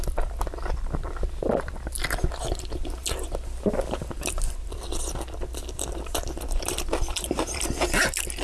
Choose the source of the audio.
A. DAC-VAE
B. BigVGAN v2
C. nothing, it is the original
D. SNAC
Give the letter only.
B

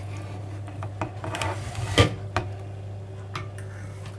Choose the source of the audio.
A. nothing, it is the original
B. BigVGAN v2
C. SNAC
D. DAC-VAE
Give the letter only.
A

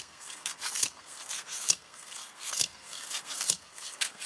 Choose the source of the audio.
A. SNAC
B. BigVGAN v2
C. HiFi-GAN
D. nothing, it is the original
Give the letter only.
A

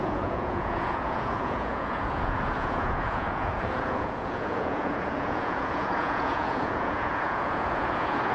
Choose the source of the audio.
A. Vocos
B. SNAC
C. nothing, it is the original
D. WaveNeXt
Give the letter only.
A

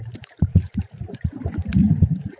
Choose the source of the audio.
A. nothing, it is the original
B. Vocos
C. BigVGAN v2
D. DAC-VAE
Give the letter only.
C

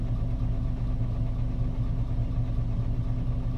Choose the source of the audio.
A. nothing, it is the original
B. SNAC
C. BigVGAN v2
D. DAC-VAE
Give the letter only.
A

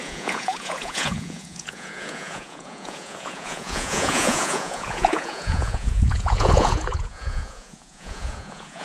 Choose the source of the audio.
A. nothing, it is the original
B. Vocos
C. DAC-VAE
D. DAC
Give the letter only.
B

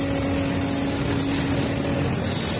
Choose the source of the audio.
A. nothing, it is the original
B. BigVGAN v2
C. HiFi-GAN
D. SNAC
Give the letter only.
A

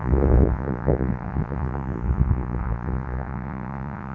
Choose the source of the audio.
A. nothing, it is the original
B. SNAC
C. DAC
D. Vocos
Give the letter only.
D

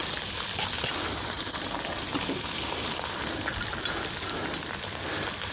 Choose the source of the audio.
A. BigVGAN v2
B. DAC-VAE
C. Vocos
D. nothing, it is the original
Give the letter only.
D